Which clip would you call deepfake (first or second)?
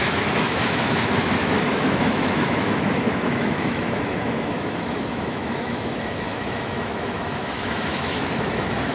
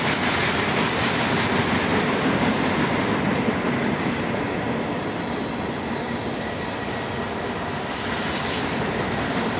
first